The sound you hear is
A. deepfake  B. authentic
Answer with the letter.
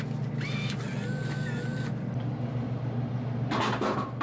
B